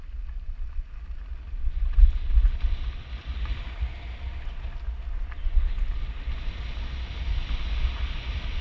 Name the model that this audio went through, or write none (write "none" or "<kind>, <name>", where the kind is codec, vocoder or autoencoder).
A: none